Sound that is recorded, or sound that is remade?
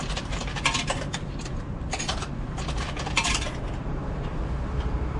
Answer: remade